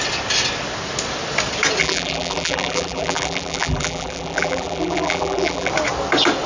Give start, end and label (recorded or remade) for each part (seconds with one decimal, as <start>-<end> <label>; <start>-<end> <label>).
0.0-1.8 recorded; 1.8-5.7 remade; 5.7-6.5 recorded